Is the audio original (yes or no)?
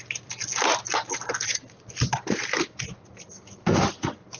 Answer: yes